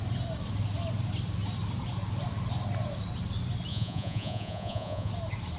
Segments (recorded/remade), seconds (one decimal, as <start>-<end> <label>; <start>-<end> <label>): 0.0-3.7 recorded; 3.7-5.1 remade; 5.1-5.6 recorded